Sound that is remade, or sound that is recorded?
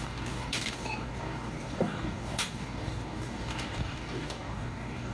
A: remade